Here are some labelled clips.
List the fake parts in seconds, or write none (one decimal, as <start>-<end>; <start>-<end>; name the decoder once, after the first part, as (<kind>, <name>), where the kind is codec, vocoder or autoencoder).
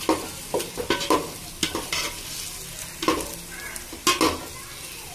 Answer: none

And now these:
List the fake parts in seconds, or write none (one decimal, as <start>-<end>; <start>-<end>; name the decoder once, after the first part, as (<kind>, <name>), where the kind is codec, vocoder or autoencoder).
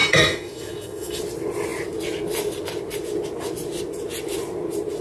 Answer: 0.0-1.2 (autoencoder, DAC-VAE)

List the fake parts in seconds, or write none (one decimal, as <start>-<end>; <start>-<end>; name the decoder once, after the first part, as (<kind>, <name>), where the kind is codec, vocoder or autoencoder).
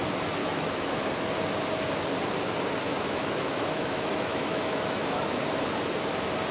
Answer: 0.4-1.1 (autoencoder, DAC-VAE); 2.9-5.4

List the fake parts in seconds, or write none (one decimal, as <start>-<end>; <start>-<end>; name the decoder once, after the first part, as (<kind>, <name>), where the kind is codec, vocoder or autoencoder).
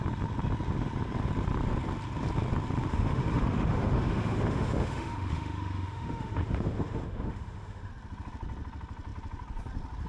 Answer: 2.9-7.9 (autoencoder, DAC-VAE)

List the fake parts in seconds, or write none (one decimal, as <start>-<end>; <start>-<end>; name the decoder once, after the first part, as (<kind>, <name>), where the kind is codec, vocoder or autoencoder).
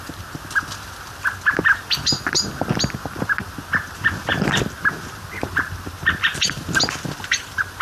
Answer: none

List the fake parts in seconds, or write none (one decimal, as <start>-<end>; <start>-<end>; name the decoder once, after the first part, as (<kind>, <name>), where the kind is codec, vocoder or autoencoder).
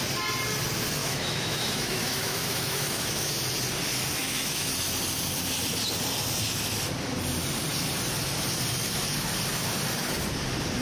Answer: 1.0-3.3 (autoencoder, DAC-VAE); 4.2-4.7